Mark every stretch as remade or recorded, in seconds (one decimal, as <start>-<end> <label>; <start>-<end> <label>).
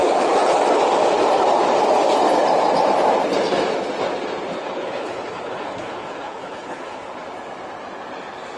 0.0-0.6 remade; 0.6-4.5 recorded; 4.5-7.2 remade; 7.2-8.6 recorded